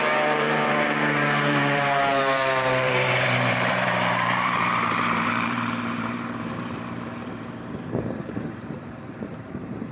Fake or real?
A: fake